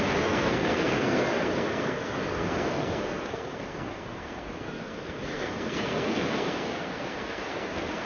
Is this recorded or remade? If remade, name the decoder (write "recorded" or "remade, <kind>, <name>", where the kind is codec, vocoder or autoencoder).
remade, codec, SNAC